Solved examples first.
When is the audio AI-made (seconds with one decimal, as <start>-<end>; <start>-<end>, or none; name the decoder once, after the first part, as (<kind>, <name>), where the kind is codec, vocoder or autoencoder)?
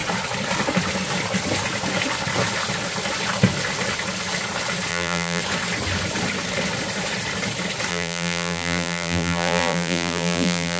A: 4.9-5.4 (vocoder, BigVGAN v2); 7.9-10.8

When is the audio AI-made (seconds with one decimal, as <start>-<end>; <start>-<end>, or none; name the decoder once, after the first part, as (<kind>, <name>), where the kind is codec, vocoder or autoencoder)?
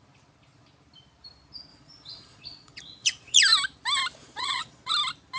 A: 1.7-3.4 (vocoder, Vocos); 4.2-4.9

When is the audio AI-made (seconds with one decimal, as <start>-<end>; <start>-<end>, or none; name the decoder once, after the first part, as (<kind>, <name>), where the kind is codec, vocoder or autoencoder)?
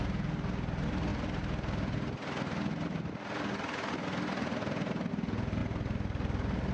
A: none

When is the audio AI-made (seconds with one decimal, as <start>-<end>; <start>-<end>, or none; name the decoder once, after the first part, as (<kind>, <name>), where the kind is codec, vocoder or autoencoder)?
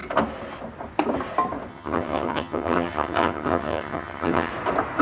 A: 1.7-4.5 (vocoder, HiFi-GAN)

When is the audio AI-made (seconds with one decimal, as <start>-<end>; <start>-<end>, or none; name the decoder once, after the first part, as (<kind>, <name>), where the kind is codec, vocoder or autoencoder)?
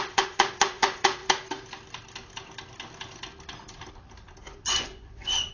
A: 0.0-1.2 (vocoder, Vocos); 4.4-5.5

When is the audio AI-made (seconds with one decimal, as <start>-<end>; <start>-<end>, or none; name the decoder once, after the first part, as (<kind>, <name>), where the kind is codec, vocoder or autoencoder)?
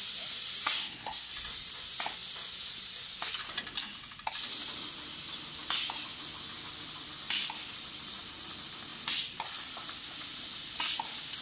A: 0.8-1.3 (codec, SNAC)